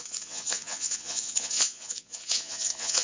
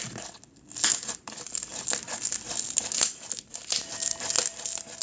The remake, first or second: first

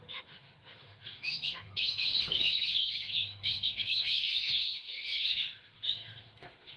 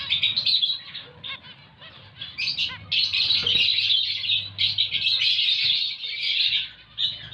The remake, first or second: first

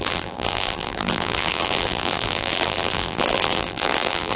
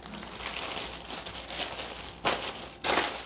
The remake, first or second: first